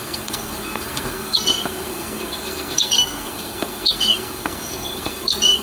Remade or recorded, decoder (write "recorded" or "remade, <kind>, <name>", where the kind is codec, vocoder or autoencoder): remade, codec, SNAC